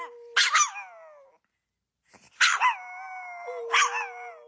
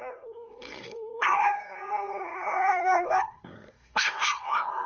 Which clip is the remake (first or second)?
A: second